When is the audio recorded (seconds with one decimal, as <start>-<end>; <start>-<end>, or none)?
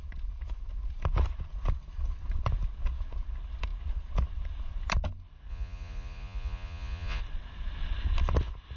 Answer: 0.0-5.5; 7.2-8.8